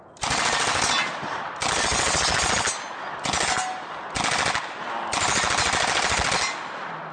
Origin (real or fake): real